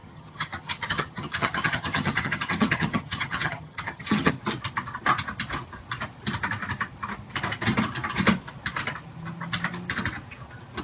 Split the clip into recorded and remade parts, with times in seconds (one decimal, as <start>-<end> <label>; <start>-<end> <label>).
0.0-4.3 remade; 4.3-10.8 recorded